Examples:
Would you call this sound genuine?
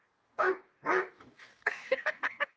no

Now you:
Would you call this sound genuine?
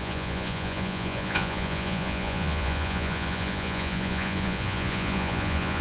no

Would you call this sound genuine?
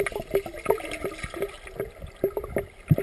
yes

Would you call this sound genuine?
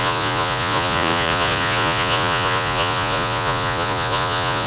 no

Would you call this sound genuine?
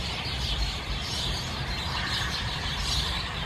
no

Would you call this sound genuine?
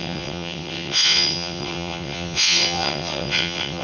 no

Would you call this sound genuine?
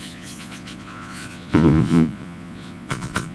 no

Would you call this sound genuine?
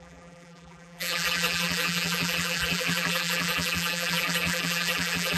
no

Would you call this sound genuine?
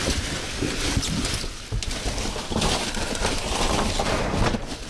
no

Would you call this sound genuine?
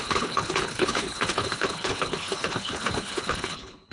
no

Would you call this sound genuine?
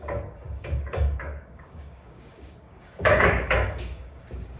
no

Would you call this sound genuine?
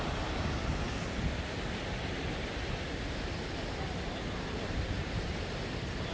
yes